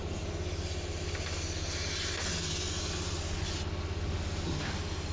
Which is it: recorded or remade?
recorded